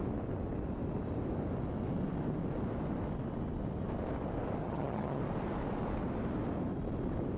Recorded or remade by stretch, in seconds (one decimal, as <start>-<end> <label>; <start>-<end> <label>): 0.0-4.6 recorded; 4.6-5.2 remade; 5.2-7.4 recorded